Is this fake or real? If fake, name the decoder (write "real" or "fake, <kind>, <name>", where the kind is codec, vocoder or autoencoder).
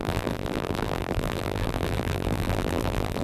fake, vocoder, BigVGAN v2